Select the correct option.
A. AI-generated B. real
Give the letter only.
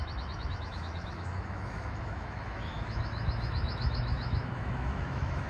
A